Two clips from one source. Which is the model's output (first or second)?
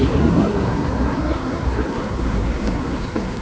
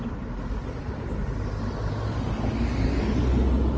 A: first